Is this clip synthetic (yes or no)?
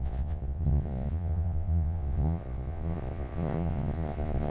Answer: yes